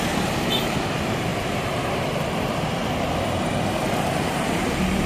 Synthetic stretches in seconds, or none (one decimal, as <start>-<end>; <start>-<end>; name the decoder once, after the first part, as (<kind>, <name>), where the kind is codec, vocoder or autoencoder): 0.0-2.8 (vocoder, BigVGAN v2); 4.2-5.1